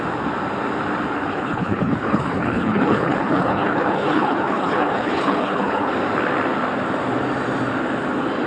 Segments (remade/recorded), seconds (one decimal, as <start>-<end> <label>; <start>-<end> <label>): 0.0-1.3 recorded; 1.3-5.9 remade; 5.9-8.5 recorded